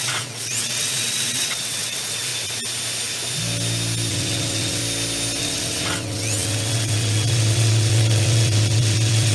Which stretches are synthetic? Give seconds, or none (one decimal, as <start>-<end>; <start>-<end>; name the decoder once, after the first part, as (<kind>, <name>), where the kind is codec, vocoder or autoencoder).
0.0-2.3 (vocoder, WaveNeXt); 4.1-4.8; 5.4-9.3